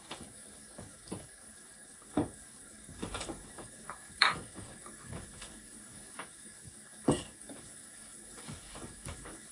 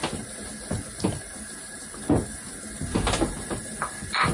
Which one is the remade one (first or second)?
first